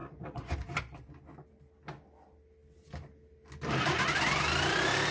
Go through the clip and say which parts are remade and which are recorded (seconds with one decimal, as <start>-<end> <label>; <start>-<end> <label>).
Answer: 0.0-0.8 remade; 0.8-5.1 recorded